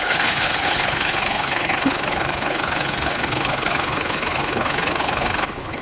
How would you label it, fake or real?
fake